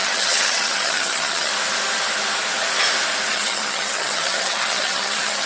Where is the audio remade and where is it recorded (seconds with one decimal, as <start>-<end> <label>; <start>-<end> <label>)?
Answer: 0.0-1.5 remade; 1.5-3.3 recorded; 3.3-5.5 remade